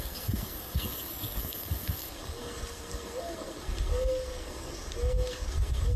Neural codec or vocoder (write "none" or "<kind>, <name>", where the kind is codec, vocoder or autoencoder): codec, SNAC